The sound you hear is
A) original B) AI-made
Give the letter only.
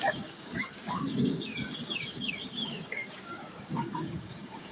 B